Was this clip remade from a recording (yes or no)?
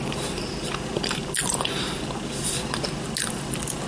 no